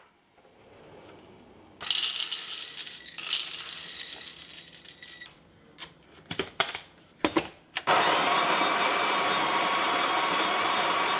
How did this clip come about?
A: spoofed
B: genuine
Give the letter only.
B